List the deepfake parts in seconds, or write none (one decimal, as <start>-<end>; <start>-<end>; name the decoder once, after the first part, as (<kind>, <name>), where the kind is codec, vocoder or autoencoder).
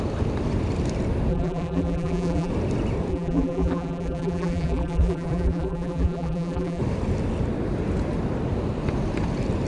1.3-2.5 (vocoder, BigVGAN v2); 3.1-6.8